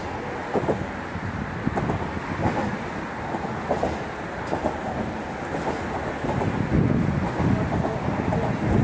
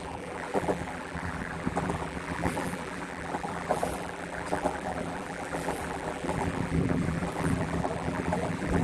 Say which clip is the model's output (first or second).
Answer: second